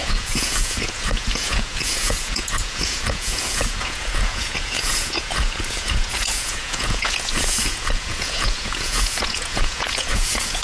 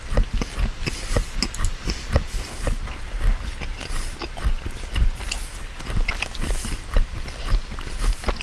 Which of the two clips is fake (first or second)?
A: first